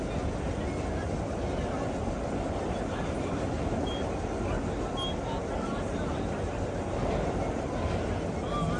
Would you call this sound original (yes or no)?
yes